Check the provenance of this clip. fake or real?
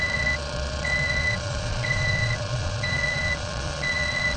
fake